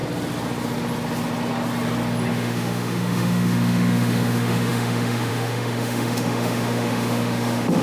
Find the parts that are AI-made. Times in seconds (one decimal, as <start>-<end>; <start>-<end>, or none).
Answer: 2.3-7.8